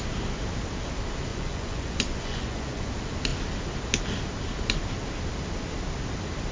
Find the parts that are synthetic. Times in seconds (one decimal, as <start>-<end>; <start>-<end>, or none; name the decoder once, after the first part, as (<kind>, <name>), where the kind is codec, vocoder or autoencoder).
1.3-2.9 (vocoder, Vocos)

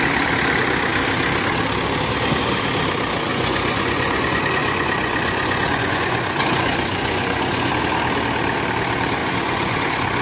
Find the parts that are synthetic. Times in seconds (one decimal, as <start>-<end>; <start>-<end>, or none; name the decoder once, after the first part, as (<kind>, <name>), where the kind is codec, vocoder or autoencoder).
3.3-7.7 (vocoder, Vocos); 9.2-10.2